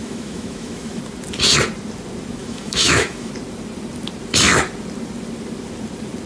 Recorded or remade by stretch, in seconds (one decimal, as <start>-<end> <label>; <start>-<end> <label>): 0.0-1.0 remade; 1.0-2.4 recorded; 2.4-3.3 remade; 3.3-6.3 recorded